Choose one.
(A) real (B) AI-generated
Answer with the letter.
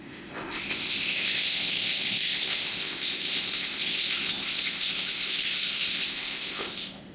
B